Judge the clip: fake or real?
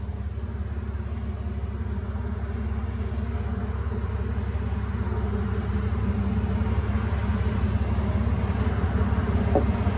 real